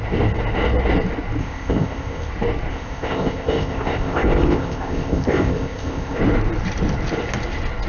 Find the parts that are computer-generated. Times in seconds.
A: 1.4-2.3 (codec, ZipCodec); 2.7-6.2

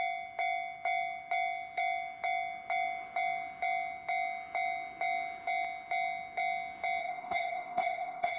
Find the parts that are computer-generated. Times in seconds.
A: 7.0-8.4 (codec, ZipCodec)

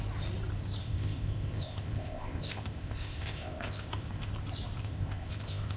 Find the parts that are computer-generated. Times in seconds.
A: 0.8-4.3 (codec, ZipCodec); 4.8-5.8